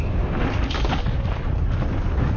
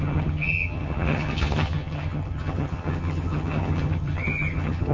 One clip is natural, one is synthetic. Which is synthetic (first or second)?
second